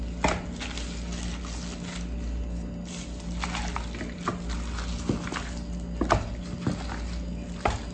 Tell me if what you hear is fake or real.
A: real